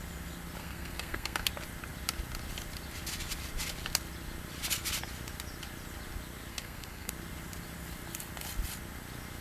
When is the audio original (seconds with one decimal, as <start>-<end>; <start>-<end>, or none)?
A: 0.0-0.6; 1.5-6.5; 7.1-9.4